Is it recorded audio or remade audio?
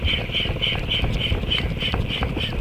recorded